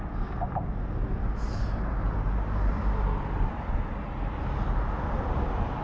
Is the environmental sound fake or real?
real